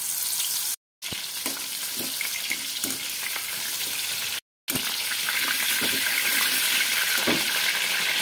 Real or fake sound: real